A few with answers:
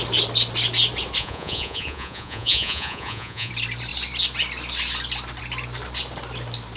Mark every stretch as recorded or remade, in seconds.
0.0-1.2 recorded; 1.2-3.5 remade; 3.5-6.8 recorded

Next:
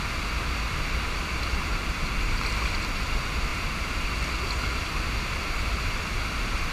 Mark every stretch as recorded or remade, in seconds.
0.0-1.7 recorded; 1.7-2.5 remade; 2.5-3.5 recorded; 3.5-4.1 remade; 4.1-6.7 recorded

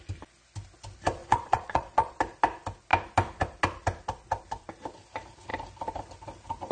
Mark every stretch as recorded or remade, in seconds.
0.0-1.2 recorded; 1.2-2.2 remade; 2.2-6.7 recorded

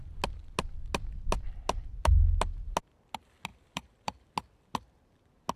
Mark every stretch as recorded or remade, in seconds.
0.0-3.5 recorded; 3.5-4.3 remade; 4.3-5.6 recorded

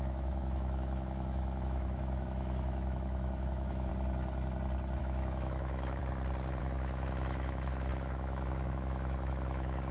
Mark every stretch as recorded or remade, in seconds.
0.0-3.9 remade; 3.9-5.0 recorded; 5.0-6.0 remade; 6.0-6.6 recorded; 6.6-9.9 remade